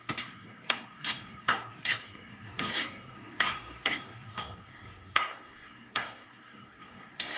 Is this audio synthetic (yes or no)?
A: yes